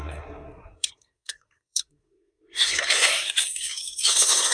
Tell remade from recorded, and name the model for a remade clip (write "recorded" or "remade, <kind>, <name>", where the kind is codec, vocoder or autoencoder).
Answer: remade, codec, SNAC